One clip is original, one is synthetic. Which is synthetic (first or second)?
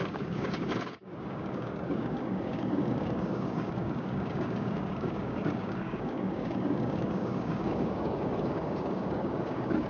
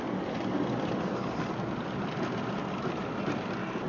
first